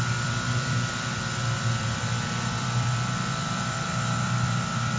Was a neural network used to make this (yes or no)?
yes